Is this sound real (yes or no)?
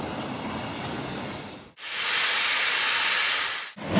yes